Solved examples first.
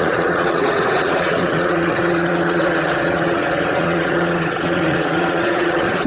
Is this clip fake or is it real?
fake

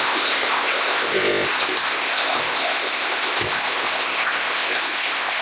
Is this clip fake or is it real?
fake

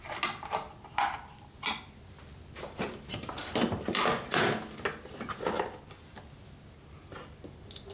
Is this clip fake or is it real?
real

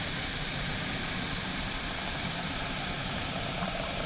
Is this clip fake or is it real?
fake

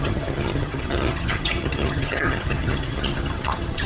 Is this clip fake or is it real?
fake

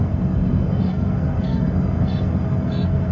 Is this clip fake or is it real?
fake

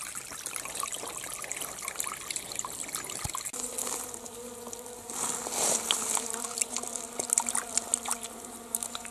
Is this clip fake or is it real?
real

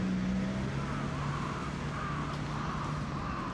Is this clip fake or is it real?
real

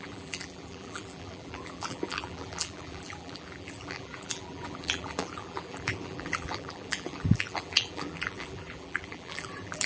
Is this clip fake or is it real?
fake